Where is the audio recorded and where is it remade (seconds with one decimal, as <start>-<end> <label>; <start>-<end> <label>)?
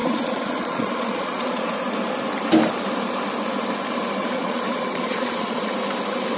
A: 0.0-1.7 remade; 1.7-4.2 recorded; 4.2-5.7 remade; 5.7-6.4 recorded